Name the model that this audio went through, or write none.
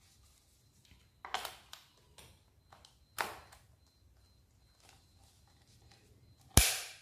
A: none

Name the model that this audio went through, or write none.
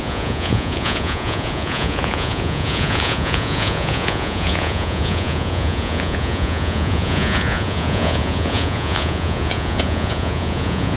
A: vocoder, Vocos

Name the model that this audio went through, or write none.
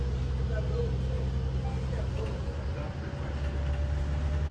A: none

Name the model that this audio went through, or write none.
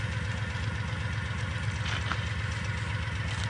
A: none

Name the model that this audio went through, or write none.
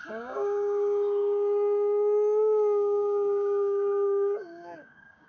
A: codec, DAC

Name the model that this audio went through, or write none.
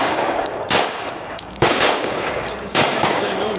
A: codec, DAC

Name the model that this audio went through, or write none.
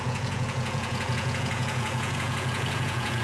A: vocoder, Vocos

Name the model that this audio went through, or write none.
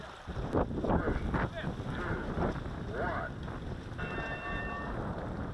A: none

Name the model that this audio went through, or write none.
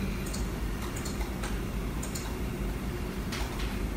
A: none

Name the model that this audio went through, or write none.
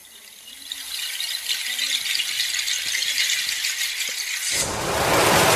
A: none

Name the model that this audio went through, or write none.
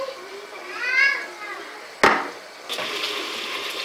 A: none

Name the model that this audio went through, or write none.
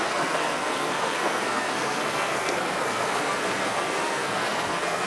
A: codec, SNAC